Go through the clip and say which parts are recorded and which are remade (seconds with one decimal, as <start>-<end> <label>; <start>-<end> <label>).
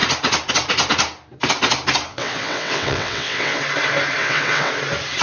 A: 0.0-2.1 recorded; 2.1-3.6 remade; 3.6-4.2 recorded; 4.2-4.7 remade; 4.7-5.2 recorded